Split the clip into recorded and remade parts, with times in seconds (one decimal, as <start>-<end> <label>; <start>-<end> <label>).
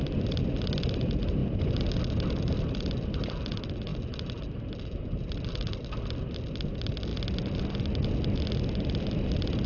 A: 0.0-9.7 recorded